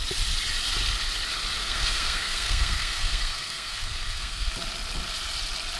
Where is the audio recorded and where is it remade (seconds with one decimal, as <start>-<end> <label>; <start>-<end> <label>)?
0.0-1.6 recorded; 1.6-4.5 remade; 4.5-5.8 recorded